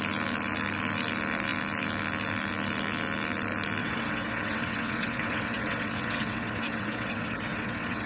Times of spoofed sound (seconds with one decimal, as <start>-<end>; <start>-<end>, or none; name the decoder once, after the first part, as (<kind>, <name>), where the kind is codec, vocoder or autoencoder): 3.8-8.1 (vocoder, WaveNeXt)